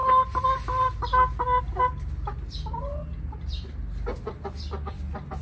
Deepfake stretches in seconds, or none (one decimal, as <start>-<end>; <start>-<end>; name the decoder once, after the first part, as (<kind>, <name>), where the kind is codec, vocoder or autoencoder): none